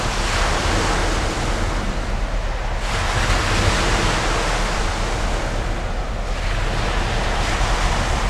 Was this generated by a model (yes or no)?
no